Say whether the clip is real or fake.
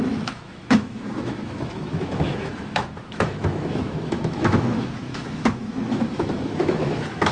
fake